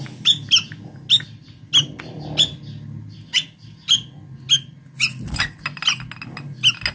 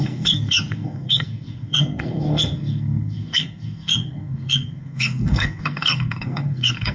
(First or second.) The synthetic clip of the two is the second